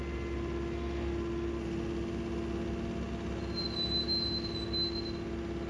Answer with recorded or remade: recorded